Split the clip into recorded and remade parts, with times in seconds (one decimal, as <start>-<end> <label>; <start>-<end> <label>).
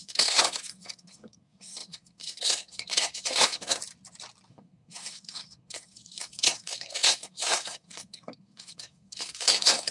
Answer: 0.0-3.8 remade; 3.8-4.5 recorded; 4.5-9.9 remade